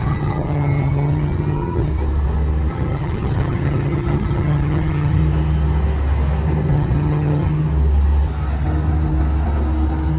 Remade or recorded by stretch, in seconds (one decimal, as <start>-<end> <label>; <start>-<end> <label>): 0.0-1.9 remade; 1.9-2.7 recorded; 2.7-5.2 remade; 5.2-6.7 recorded; 6.7-7.5 remade; 7.5-10.2 recorded

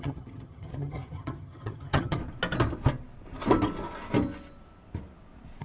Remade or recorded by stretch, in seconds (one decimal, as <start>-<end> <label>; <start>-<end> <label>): 0.0-2.2 remade; 2.2-5.6 recorded

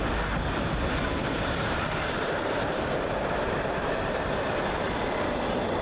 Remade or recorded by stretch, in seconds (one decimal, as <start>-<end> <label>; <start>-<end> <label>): 0.0-1.2 recorded; 1.2-4.7 remade; 4.7-5.8 recorded

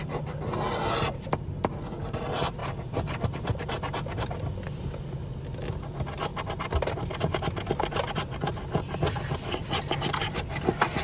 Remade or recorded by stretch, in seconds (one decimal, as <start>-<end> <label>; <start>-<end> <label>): 0.0-11.0 recorded

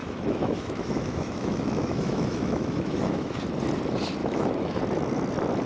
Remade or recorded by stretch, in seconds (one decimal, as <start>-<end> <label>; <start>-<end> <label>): 0.0-3.4 remade; 3.4-4.2 recorded; 4.2-4.8 remade; 4.8-5.7 recorded

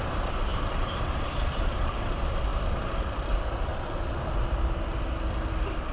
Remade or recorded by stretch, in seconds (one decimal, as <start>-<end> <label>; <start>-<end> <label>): 0.0-0.5 recorded; 0.5-2.0 remade; 2.0-5.9 recorded

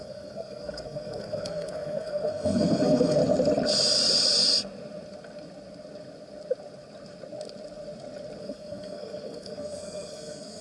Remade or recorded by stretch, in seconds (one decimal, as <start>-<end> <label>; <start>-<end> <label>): 0.0-3.2 remade; 3.2-8.4 recorded; 8.4-10.6 remade